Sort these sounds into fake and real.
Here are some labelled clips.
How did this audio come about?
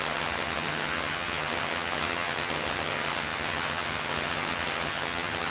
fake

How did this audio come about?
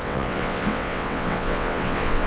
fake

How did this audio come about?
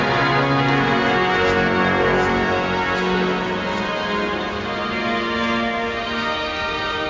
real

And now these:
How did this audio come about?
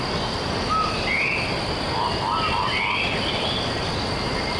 real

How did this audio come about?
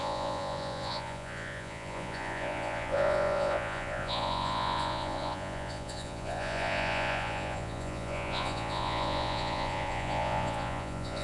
fake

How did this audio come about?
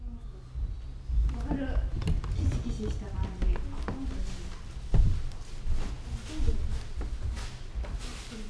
real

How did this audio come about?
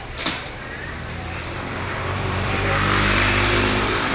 fake